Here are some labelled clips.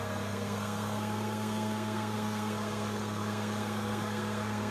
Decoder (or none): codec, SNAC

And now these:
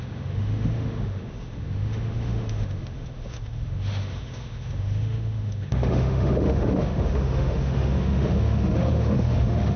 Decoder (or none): autoencoder, DAC-VAE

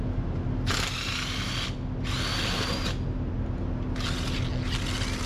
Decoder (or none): none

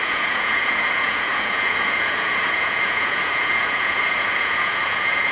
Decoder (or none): vocoder, Vocos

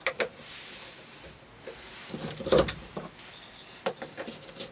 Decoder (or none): none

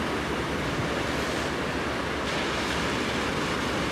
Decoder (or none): none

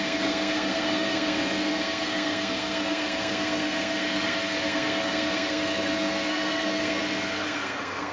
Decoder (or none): codec, SNAC